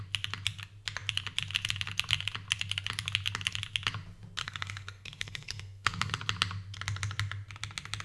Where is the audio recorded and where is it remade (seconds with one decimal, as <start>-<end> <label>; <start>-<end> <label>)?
0.0-4.4 recorded; 4.4-6.1 remade; 6.1-8.0 recorded